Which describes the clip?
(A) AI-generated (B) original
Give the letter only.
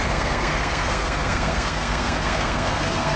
A